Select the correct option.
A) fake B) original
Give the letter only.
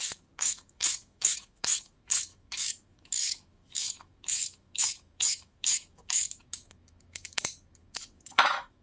A